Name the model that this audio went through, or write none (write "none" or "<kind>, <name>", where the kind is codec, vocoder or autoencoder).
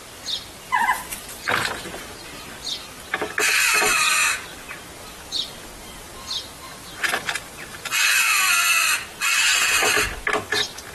none